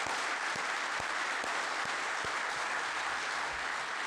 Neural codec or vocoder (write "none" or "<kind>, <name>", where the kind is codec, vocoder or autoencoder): none